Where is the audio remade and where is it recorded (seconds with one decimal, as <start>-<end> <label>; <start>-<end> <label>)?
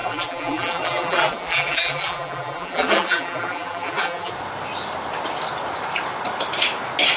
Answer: 0.0-4.3 remade; 4.3-7.2 recorded